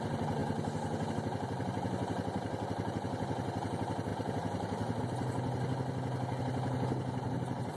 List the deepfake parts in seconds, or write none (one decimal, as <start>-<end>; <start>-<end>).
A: none